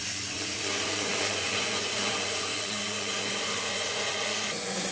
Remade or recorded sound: remade